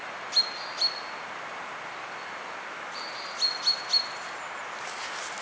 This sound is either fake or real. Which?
real